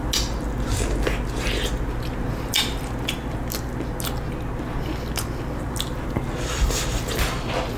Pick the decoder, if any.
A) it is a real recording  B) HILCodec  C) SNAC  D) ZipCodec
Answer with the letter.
A